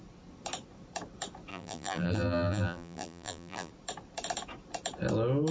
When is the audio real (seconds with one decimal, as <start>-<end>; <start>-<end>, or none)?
0.0-1.5; 3.7-5.5